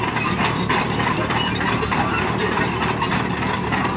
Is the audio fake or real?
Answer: real